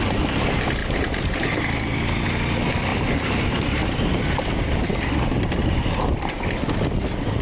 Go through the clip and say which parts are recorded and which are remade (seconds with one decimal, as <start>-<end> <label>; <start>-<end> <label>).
0.0-0.8 recorded; 0.8-1.4 remade; 1.4-2.9 recorded; 2.9-4.9 remade; 4.9-7.4 recorded